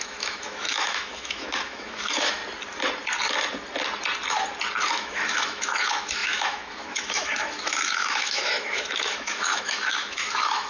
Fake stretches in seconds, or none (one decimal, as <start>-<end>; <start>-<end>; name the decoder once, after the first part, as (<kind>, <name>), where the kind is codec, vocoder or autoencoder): 0.0-2.4 (autoencoder, DAC-VAE); 4.9-10.7